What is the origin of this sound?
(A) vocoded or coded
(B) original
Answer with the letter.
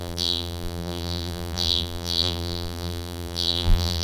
A